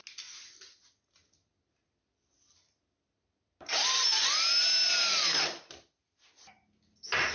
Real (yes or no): yes